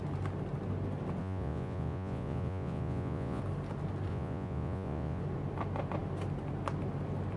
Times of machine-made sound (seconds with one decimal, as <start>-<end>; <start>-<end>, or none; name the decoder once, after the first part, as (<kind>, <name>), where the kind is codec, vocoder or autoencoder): 1.2-3.4 (vocoder, Vocos); 4.1-5.2